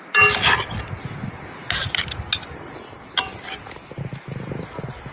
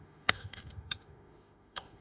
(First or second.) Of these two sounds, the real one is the first